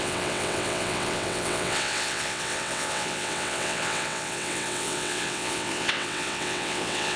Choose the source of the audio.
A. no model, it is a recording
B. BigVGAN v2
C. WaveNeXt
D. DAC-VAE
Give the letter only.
C